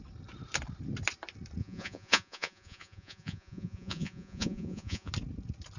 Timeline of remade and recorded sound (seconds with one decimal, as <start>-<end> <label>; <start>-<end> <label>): 0.0-1.6 recorded; 1.6-5.1 remade; 5.1-5.8 recorded